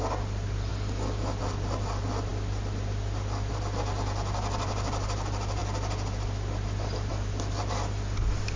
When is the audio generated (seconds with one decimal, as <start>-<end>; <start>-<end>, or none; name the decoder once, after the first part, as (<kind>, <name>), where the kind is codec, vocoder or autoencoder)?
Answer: 0.0-0.7 (vocoder, BigVGAN v2); 1.4-2.3; 3.5-5.6; 7.1-8.6